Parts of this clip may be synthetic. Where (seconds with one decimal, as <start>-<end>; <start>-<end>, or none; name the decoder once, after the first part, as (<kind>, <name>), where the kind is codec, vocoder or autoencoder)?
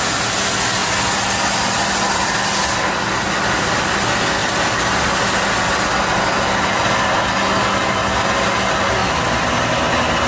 none